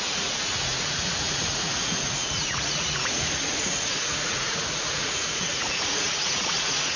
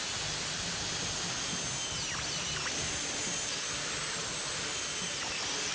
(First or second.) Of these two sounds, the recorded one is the second